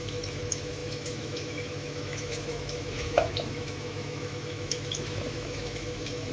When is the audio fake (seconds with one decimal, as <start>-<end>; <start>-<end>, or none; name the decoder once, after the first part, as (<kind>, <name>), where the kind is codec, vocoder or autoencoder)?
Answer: 0.0-6.3 (autoencoder, DAC-VAE)